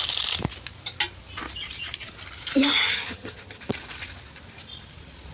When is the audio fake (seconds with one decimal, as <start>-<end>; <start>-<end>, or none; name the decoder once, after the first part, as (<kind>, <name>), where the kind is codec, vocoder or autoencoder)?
2.7-3.6 (vocoder, HiFi-GAN)